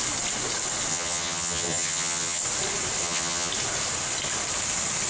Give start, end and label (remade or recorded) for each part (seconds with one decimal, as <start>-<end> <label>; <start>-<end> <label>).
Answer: 0.0-0.9 recorded; 0.9-2.4 remade; 2.4-3.0 recorded; 3.0-3.5 remade; 3.5-5.1 recorded